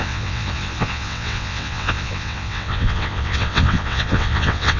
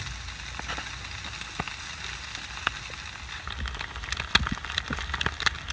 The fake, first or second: first